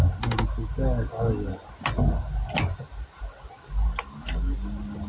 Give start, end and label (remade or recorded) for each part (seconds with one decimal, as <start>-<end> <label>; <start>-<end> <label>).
0.0-5.1 recorded